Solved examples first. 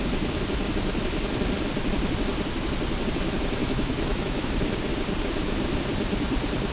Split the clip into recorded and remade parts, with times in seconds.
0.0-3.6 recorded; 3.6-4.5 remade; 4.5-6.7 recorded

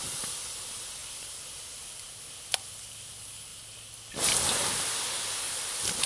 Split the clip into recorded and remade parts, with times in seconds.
0.0-6.1 recorded

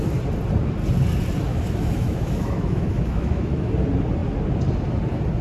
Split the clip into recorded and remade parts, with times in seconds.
0.0-1.5 recorded; 1.5-3.7 remade; 3.7-5.4 recorded

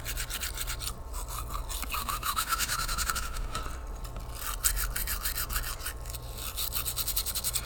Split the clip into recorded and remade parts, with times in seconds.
0.0-2.0 recorded; 2.0-3.6 remade; 3.6-7.7 recorded